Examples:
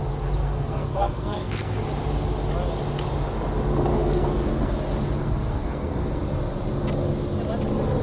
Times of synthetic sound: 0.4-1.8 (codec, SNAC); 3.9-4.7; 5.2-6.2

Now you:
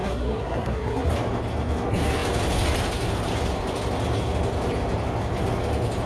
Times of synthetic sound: 0.0-1.1 (codec, SNAC)

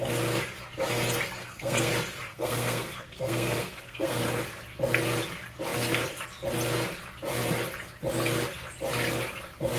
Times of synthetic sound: 1.4-1.9 (codec, SNAC); 2.3-4.2

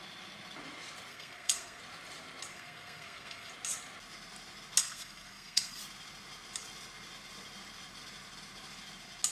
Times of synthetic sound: 1.1-1.8 (codec, SNAC); 2.5-3.5; 4.8-5.8